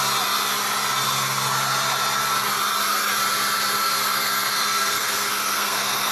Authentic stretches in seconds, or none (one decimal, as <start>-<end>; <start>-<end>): 0.0-3.8